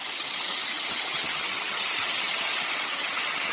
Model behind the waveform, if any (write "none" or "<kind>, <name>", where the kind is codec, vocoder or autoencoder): vocoder, HiFi-GAN